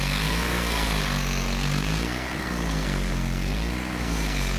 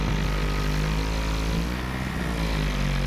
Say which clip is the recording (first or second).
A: second